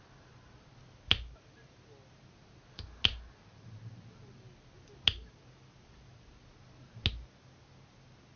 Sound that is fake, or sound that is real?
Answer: real